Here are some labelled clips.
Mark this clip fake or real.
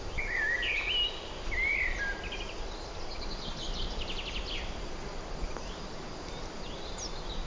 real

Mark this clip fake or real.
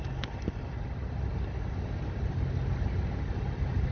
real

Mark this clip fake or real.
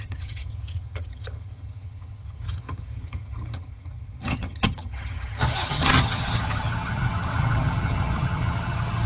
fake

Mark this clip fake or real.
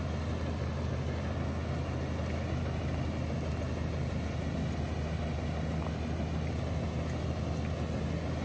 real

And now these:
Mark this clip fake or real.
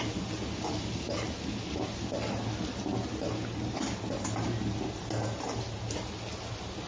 real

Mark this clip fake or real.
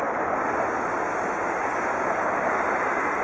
real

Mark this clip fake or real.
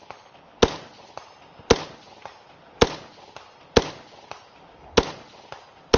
real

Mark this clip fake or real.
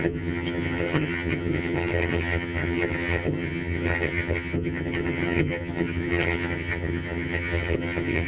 fake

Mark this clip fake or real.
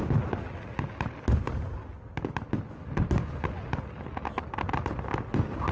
real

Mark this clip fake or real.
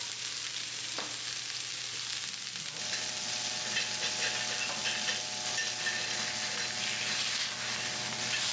real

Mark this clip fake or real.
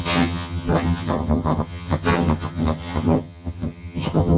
fake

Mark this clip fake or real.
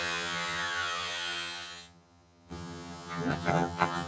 fake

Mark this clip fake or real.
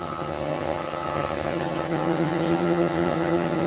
fake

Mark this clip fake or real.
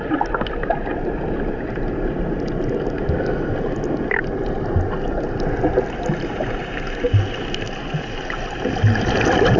real